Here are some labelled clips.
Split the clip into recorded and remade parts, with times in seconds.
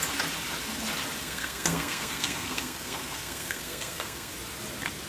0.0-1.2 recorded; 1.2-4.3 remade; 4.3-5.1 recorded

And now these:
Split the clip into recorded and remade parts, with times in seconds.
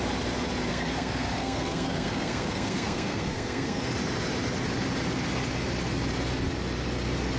0.0-0.7 recorded; 0.7-3.8 remade; 3.8-7.4 recorded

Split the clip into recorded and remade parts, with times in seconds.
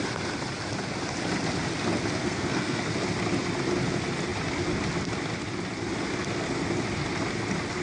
0.0-2.2 recorded; 2.2-2.8 remade; 2.8-7.8 recorded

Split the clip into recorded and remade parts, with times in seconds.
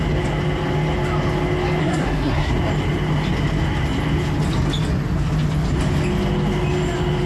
0.0-1.8 recorded; 1.8-2.5 remade; 2.5-7.3 recorded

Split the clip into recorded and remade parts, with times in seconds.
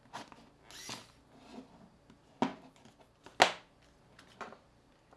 0.0-5.2 recorded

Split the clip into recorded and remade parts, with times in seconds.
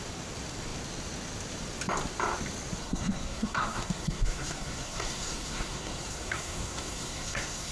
0.0-2.8 recorded; 2.8-7.7 remade